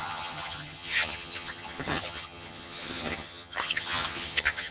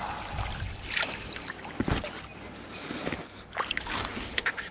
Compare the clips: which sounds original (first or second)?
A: second